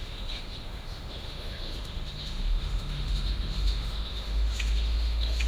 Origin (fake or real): fake